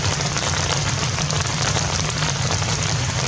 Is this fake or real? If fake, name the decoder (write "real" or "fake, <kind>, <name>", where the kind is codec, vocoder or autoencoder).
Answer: fake, vocoder, BigVGAN v2